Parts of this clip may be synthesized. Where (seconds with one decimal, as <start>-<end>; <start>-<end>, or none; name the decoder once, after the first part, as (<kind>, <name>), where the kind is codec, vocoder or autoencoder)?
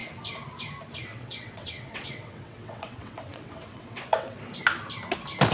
1.1-4.4 (vocoder, WaveNeXt)